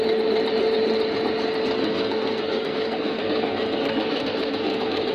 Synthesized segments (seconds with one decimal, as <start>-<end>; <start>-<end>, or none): 1.8-5.1